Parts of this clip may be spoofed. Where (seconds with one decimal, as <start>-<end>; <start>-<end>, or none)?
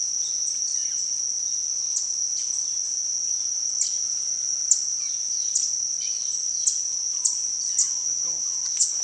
7.8-9.0